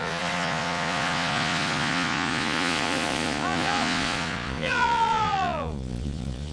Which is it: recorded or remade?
remade